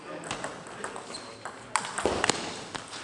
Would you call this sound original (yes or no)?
yes